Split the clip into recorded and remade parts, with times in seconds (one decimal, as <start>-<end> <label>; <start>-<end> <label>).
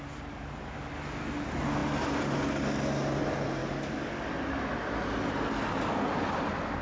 0.0-3.6 recorded; 3.6-4.3 remade; 4.3-6.8 recorded